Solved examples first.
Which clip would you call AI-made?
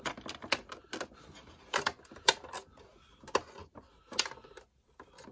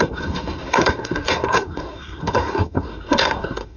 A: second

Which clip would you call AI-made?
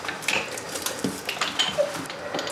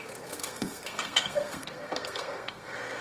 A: second